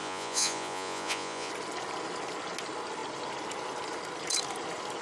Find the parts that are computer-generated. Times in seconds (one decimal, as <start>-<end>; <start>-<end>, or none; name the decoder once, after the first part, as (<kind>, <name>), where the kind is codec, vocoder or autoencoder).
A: 0.0-1.5 (vocoder, Vocos)

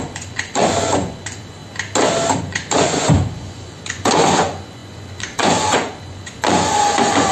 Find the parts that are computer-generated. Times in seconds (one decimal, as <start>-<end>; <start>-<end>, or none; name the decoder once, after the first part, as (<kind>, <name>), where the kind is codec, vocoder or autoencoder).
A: 0.0-1.6 (vocoder, Vocos); 2.4-7.3

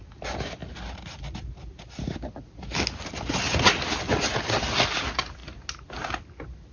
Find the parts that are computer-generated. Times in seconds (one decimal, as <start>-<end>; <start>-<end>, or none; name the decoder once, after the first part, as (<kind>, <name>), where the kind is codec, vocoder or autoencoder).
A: none

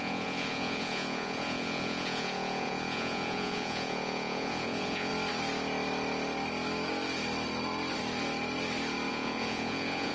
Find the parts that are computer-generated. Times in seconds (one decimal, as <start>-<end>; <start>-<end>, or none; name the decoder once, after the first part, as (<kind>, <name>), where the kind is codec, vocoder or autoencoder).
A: 0.0-5.1 (vocoder, Vocos); 9.1-10.1

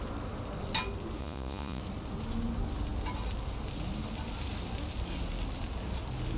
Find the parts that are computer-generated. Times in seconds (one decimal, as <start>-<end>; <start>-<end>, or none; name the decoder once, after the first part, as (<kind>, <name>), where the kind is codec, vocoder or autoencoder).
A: 1.2-1.8 (vocoder, Vocos)